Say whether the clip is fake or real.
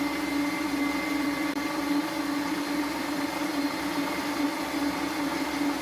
fake